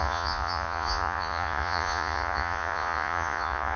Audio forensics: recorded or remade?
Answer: remade